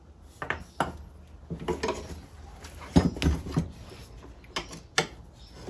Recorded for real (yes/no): yes